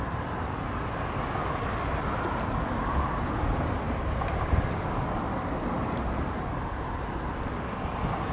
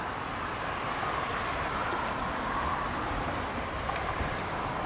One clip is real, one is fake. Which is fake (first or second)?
second